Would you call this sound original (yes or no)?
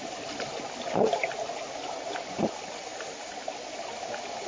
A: yes